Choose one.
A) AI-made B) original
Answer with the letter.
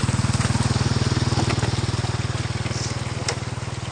B